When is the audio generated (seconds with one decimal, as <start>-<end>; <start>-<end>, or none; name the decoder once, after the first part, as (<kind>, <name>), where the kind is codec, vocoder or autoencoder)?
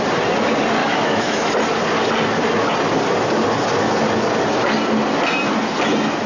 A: 0.8-1.5 (autoencoder, DAC-VAE)